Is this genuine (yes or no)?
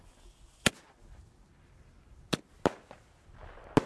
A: yes